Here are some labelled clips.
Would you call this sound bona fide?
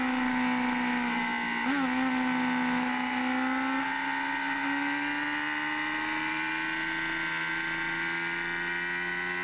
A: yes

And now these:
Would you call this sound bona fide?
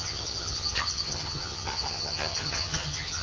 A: no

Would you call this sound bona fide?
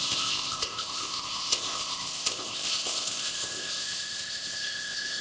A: no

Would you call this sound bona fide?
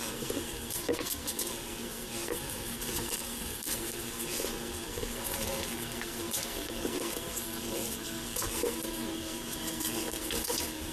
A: no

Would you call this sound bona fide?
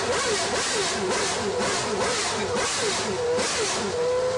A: yes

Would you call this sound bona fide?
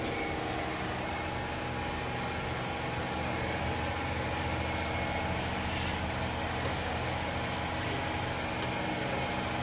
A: yes